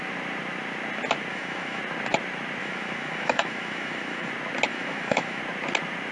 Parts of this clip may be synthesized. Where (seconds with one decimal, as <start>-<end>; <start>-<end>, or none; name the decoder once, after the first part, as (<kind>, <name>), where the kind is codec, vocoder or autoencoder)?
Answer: 1.3-1.8 (autoencoder, DAC-VAE); 2.6-4.3; 4.7-5.4

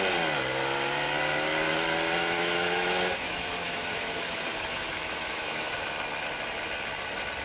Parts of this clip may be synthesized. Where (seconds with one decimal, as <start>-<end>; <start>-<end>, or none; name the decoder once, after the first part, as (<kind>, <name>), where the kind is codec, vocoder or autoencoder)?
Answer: 2.2-5.7 (autoencoder, DAC-VAE)

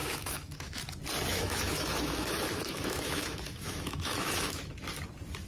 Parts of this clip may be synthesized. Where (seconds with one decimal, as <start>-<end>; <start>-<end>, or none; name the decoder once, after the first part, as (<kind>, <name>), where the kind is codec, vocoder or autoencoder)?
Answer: 0.0-0.8 (autoencoder, DAC-VAE); 1.3-4.6

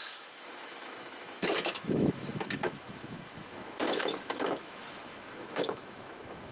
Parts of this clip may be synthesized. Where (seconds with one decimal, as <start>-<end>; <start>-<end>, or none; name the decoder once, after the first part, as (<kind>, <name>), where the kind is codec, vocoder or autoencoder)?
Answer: 0.0-6.5 (autoencoder, DAC-VAE)

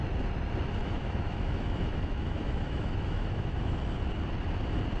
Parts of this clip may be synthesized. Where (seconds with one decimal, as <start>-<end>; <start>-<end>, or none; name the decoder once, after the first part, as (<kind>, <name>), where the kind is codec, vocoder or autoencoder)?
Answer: 0.8-3.8 (autoencoder, DAC-VAE)

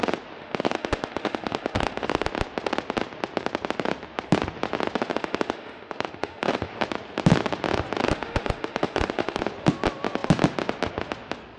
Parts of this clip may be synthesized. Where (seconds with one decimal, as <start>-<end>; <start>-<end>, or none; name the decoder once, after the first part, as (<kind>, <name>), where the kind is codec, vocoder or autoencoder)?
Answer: 0.4-2.3 (autoencoder, DAC-VAE); 5.1-6.7; 8.0-9.4